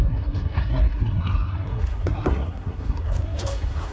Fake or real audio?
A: fake